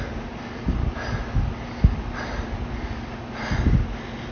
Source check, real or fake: real